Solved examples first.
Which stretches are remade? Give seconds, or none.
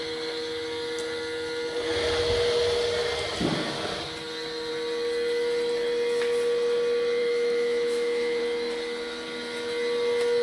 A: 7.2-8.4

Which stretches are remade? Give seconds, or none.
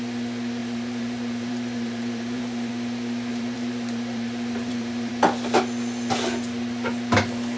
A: 0.6-2.7; 3.3-5.1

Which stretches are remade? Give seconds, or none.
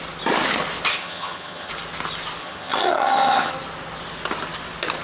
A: 0.9-1.7; 2.4-3.5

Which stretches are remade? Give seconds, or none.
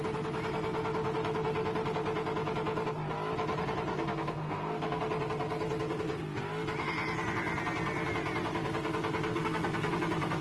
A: 3.9-5.0; 9.3-9.9